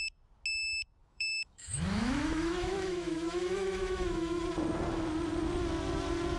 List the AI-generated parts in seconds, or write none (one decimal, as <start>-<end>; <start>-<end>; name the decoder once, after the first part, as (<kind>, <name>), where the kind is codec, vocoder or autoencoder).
1.0-4.4 (autoencoder, DAC-VAE)